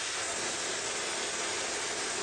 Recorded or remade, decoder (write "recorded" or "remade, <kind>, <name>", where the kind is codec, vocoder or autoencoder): recorded